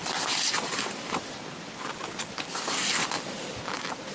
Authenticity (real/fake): real